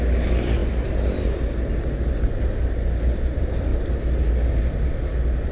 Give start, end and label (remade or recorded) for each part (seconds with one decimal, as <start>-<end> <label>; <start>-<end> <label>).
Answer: 0.0-5.5 recorded